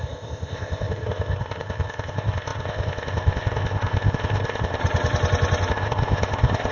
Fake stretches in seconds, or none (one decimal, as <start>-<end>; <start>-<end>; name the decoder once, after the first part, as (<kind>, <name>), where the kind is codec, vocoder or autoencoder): 0.0-4.8 (codec, ZipCodec); 5.7-6.7